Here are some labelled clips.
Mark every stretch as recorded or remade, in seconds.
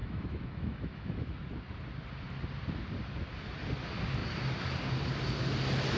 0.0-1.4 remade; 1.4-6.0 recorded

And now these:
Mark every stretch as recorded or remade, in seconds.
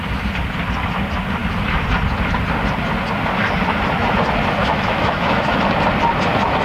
0.0-4.6 recorded; 4.6-5.6 remade; 5.6-6.6 recorded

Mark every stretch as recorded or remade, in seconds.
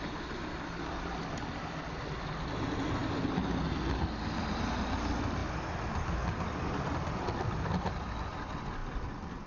0.0-9.5 recorded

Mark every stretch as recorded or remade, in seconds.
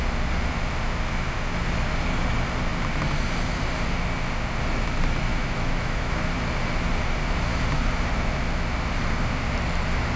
0.0-5.3 recorded; 5.3-6.1 remade; 6.1-10.2 recorded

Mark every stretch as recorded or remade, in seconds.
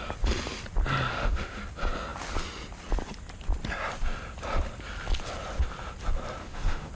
0.0-1.1 recorded; 1.1-1.6 remade; 1.6-6.4 recorded; 6.4-6.9 remade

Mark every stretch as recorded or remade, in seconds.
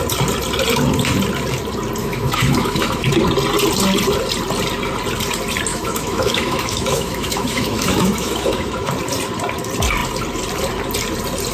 0.0-2.0 recorded; 2.0-3.2 remade; 3.2-5.7 recorded; 5.7-8.9 remade; 8.9-11.5 recorded